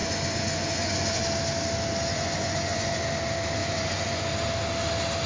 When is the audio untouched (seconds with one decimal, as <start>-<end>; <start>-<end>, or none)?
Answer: 1.2-2.1; 3.0-3.6; 4.3-5.3